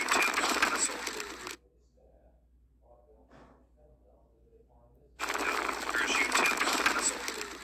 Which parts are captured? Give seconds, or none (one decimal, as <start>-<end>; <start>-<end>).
0.0-7.6